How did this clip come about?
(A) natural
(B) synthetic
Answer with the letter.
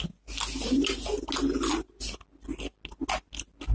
A